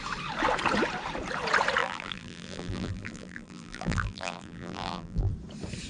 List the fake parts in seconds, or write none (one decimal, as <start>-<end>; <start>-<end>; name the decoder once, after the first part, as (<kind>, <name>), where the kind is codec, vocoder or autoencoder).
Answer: 1.8-5.3 (vocoder, BigVGAN v2)